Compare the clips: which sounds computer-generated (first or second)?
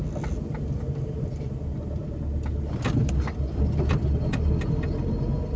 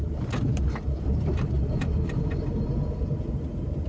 second